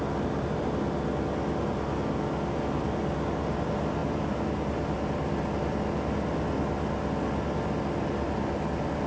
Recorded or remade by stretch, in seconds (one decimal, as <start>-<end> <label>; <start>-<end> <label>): 0.0-9.1 recorded